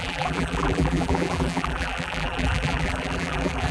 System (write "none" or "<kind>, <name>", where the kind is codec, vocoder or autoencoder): vocoder, BigVGAN v2